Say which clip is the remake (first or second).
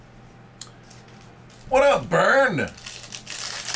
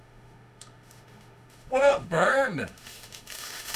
second